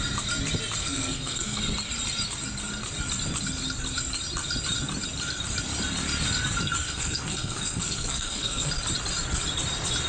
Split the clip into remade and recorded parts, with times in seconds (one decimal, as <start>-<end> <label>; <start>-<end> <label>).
0.0-0.8 recorded; 0.8-1.6 remade; 1.6-6.8 recorded; 6.8-8.7 remade; 8.7-10.1 recorded